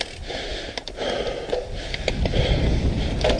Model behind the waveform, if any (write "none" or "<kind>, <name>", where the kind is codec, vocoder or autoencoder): none